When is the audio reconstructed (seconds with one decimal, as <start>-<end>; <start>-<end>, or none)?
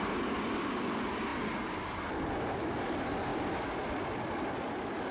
none